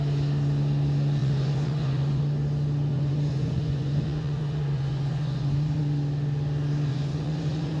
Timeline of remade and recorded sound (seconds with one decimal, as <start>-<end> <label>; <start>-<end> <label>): 0.0-1.2 recorded; 1.2-2.2 remade; 2.2-2.9 recorded; 2.9-5.8 remade; 5.8-6.9 recorded; 6.9-7.8 remade